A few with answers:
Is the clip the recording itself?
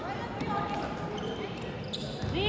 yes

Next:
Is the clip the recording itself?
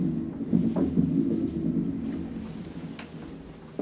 yes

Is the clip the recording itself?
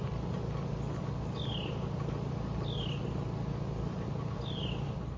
yes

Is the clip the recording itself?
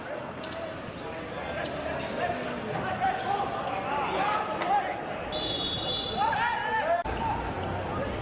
yes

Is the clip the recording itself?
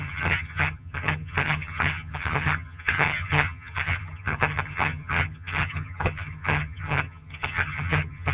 no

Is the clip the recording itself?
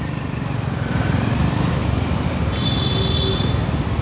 yes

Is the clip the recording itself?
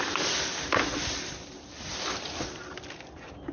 yes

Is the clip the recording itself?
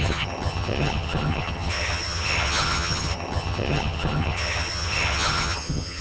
no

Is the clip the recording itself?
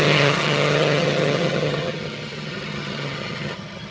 no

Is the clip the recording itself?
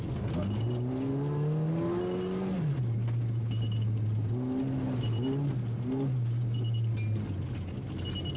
yes